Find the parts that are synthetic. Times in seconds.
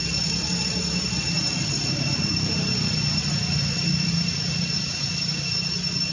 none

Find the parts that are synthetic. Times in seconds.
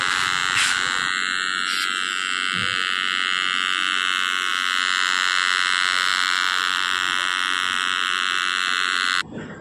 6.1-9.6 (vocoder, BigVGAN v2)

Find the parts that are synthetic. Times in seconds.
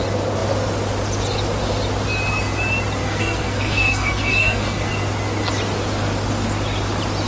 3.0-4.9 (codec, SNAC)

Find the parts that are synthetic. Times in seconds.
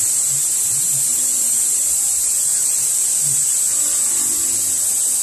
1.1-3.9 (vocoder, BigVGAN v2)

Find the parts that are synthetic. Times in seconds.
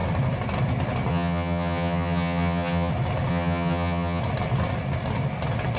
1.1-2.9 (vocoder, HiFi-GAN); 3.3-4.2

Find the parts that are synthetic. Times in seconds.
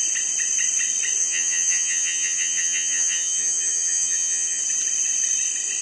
1.2-4.6 (vocoder, HiFi-GAN)